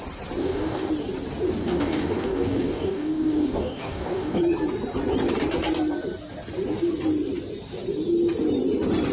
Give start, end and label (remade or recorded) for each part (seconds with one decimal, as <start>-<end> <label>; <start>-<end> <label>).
0.0-0.4 recorded; 0.4-0.9 remade; 0.9-1.6 recorded; 1.6-4.4 remade; 4.4-9.1 recorded

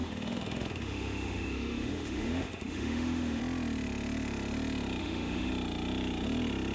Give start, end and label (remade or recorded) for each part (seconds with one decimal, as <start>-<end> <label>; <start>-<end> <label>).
0.0-3.4 remade; 3.4-5.0 recorded; 5.0-5.5 remade; 5.5-6.7 recorded

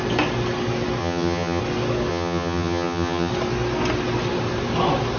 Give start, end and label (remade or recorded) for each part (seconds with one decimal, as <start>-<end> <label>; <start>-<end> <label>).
0.0-1.0 recorded; 1.0-1.6 remade; 1.6-2.1 recorded; 2.1-3.3 remade; 3.3-5.2 recorded

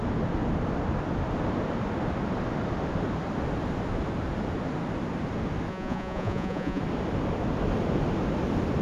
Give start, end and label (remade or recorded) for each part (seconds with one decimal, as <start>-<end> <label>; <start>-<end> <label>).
0.0-5.7 recorded; 5.7-6.8 remade; 6.8-8.8 recorded